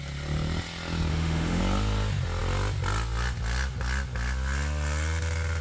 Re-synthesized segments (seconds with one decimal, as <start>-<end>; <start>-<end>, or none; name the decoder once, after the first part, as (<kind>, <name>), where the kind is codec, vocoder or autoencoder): 1.1-1.6 (autoencoder, DAC-VAE)

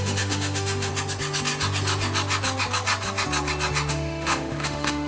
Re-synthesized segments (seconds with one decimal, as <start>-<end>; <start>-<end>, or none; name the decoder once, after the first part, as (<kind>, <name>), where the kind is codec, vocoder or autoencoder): 0.0-0.9 (autoencoder, DAC-VAE); 3.9-5.1

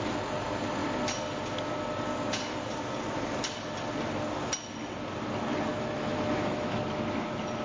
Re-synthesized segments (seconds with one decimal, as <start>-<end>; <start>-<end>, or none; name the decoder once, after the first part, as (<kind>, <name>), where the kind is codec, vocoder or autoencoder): 5.7-6.8 (autoencoder, DAC-VAE)

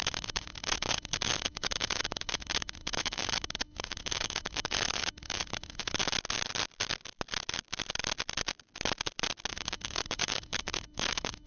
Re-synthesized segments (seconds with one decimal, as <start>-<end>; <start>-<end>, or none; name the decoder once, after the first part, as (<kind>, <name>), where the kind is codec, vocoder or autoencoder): 0.0-6.0 (autoencoder, DAC-VAE); 9.5-11.5

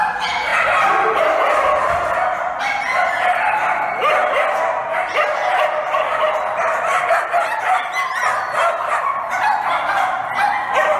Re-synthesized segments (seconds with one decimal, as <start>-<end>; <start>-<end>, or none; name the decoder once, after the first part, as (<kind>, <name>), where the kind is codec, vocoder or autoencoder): none

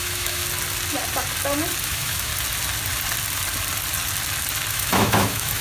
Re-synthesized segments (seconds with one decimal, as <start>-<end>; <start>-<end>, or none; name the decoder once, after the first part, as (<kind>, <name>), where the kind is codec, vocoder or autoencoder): 0.0-0.4 (autoencoder, DAC-VAE); 1.8-2.3; 4.7-5.6